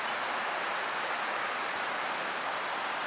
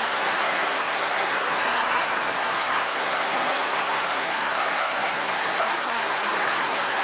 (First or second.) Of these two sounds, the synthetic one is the second